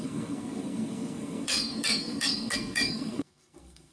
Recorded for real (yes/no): no